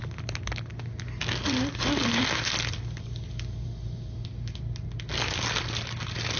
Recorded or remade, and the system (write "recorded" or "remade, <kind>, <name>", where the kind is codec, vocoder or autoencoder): recorded